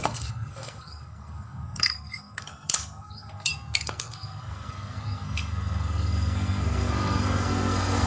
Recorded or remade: remade